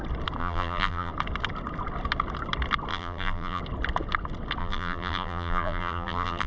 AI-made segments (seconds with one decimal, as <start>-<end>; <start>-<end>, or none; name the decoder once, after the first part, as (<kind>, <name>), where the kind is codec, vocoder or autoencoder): 0.4-1.1 (vocoder, BigVGAN v2); 2.9-3.6; 4.6-6.5